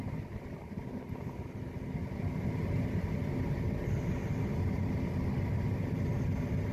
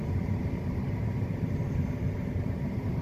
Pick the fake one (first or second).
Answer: second